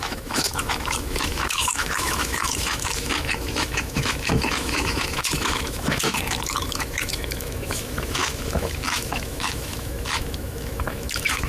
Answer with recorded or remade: remade